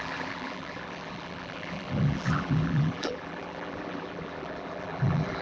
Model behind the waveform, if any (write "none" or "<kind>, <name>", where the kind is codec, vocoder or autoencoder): vocoder, BigVGAN v2